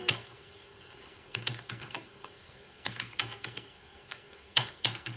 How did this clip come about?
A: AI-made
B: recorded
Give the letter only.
A